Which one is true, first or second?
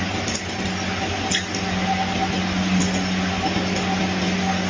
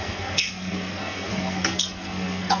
first